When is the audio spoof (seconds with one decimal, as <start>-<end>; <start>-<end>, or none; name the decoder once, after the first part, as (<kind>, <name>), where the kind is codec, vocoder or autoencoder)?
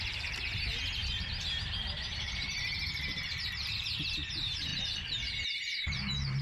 0.0-6.4 (vocoder, BigVGAN v2)